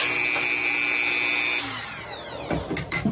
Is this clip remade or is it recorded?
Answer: recorded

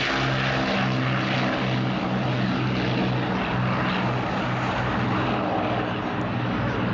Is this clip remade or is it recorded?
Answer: recorded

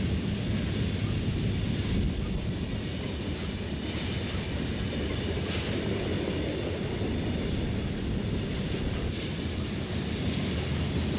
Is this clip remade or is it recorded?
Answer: recorded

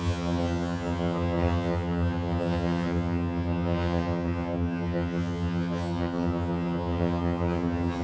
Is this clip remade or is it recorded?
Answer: remade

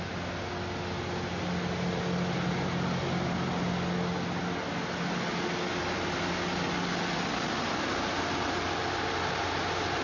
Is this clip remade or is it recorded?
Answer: recorded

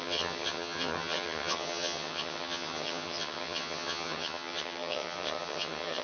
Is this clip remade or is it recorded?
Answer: remade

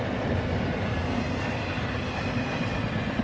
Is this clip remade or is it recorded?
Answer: recorded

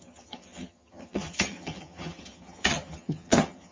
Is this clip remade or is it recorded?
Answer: remade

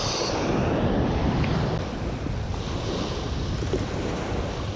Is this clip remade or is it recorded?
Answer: recorded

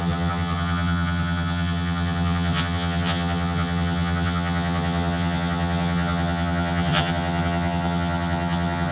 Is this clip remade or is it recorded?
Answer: remade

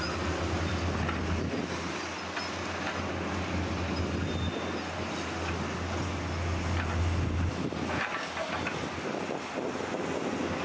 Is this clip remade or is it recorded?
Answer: recorded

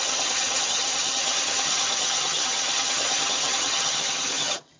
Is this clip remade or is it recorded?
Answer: remade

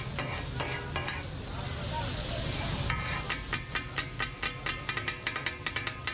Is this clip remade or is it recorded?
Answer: recorded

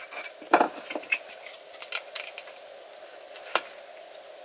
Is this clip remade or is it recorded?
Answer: recorded